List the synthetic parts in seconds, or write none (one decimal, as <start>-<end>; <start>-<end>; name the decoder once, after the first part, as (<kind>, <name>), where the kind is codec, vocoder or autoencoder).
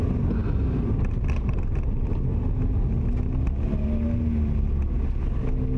none